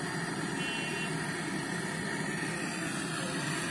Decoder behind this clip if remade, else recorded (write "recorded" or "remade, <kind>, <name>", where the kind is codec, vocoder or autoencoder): recorded